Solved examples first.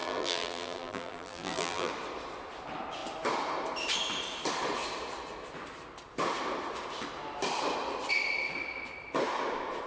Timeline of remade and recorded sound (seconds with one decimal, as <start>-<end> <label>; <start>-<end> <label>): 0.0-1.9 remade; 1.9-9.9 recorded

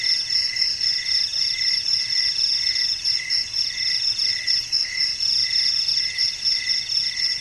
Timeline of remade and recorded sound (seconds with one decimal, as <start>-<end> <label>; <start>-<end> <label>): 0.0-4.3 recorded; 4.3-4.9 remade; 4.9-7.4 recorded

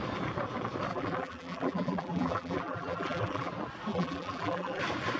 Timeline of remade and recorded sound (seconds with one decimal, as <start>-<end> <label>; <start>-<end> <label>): 0.0-0.9 recorded; 0.9-3.5 remade; 3.5-3.9 recorded; 3.9-4.8 remade; 4.8-5.2 recorded